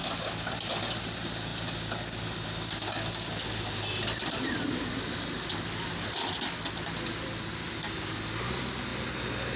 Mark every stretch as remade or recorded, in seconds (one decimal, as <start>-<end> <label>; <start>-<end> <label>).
0.0-9.6 recorded